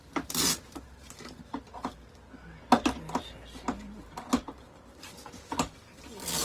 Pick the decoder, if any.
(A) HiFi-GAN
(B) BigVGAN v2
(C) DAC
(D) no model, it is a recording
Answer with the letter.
D